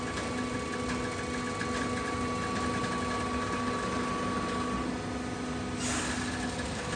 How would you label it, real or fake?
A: real